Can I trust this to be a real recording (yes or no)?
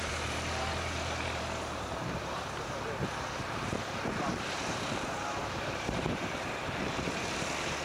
no